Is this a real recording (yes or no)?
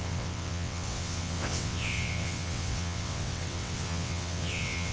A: no